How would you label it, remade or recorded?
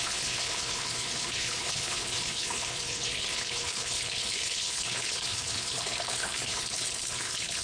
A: remade